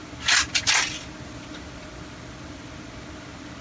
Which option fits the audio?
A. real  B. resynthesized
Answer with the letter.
A